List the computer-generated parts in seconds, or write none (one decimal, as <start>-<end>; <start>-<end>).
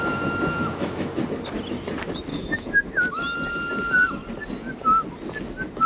0.6-1.2; 2.3-2.9